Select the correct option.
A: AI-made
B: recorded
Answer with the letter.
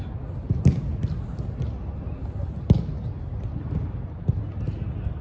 B